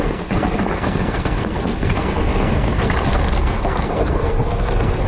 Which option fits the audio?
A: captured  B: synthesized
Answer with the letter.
B